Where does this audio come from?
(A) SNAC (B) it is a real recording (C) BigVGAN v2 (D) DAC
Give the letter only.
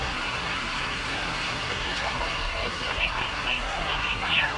A